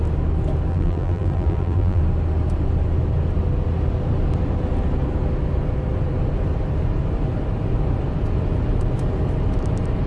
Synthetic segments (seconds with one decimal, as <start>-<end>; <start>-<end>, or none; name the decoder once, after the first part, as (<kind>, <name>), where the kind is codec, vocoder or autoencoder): 0.7-2.0 (vocoder, BigVGAN v2)